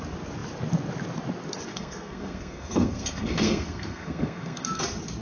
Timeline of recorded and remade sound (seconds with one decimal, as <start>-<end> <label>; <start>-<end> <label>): 0.0-1.7 recorded; 1.7-4.8 remade; 4.8-5.2 recorded